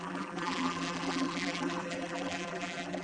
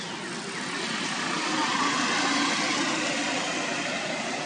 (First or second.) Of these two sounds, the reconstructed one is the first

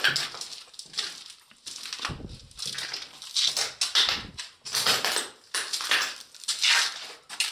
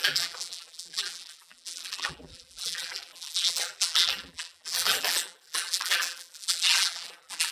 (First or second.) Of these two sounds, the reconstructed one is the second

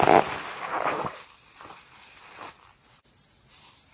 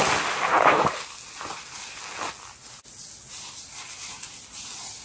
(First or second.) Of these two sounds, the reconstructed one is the first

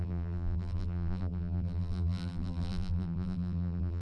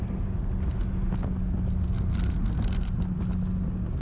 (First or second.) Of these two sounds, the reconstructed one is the first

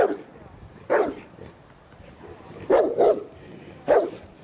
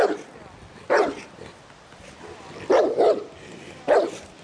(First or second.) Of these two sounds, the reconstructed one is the first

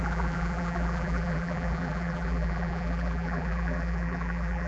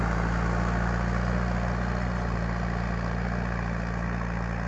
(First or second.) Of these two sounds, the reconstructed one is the first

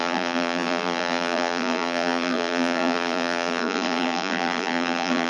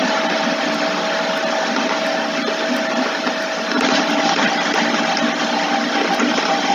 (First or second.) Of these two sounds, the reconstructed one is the first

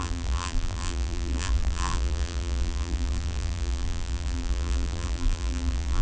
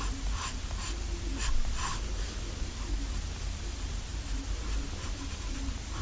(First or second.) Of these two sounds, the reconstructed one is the first